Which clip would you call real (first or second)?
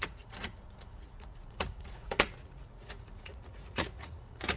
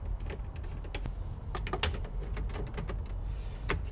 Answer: second